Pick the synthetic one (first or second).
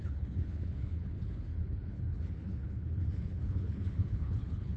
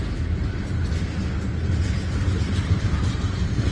first